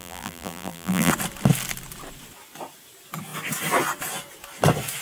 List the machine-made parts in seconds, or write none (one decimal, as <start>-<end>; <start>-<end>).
0.0-1.1